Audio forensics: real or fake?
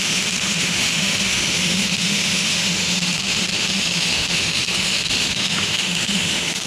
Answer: fake